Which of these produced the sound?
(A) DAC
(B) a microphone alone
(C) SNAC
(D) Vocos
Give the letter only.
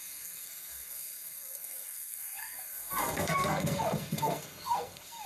C